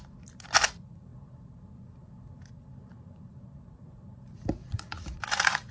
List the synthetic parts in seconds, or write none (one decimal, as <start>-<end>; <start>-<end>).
4.6-5.7